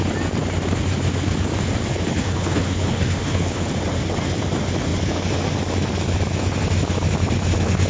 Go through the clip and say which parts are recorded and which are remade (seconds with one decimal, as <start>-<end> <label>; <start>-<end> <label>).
0.0-1.9 recorded; 1.9-3.7 remade; 3.7-7.9 recorded